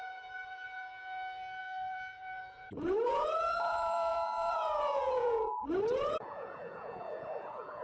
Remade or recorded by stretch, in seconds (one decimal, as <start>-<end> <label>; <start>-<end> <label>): 0.0-7.8 remade